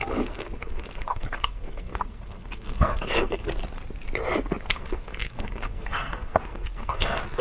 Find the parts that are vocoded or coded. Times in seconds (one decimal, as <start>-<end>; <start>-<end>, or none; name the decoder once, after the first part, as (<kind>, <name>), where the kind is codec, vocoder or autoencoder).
0.0-3.4 (codec, SNAC); 4.7-7.4